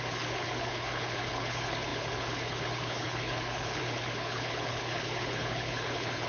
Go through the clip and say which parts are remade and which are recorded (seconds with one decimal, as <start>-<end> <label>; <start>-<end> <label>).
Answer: 0.0-6.3 remade